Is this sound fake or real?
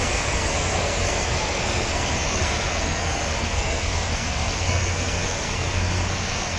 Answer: fake